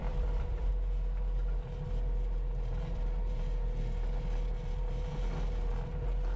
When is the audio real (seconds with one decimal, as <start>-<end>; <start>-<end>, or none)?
0.7-6.4